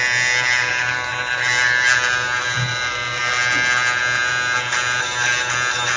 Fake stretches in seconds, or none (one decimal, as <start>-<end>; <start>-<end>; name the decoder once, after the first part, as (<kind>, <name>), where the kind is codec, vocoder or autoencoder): none